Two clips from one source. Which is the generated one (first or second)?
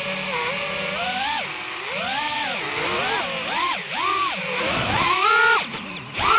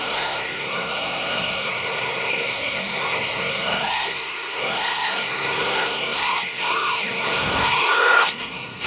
second